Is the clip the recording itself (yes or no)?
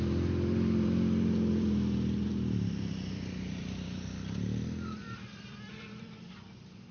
no